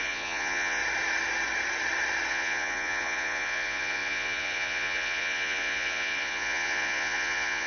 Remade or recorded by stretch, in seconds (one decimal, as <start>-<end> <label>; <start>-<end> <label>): 0.0-0.8 remade; 0.8-2.3 recorded; 2.3-7.7 remade